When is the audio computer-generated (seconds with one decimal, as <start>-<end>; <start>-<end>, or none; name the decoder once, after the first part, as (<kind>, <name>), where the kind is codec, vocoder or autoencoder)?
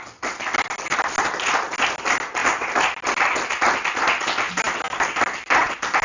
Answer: none